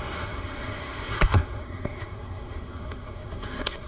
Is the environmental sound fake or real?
fake